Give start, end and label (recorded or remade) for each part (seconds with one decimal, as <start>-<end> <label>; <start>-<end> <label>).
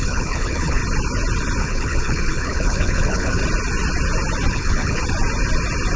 0.0-0.8 remade; 0.8-1.6 recorded; 1.6-3.4 remade; 3.4-4.5 recorded; 4.5-5.0 remade; 5.0-6.0 recorded